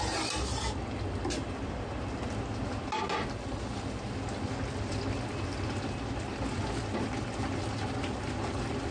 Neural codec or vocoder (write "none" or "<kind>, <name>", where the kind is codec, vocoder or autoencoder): none